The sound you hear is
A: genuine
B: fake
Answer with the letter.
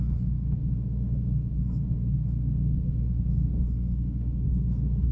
B